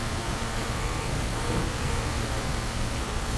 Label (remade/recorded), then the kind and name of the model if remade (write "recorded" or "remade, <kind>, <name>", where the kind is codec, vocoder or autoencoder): remade, codec, SNAC